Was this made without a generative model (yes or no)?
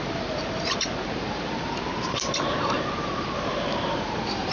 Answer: no